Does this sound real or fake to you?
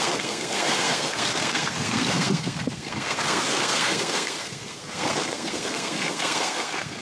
fake